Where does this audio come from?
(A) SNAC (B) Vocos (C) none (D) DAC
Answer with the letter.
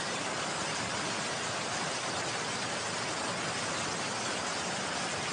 C